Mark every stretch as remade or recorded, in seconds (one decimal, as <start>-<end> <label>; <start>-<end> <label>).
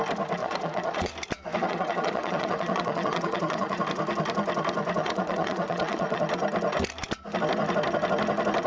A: 0.0-0.4 recorded; 0.4-1.1 remade; 1.1-1.6 recorded; 1.6-3.8 remade; 3.8-5.0 recorded; 5.0-6.2 remade; 6.2-8.7 recorded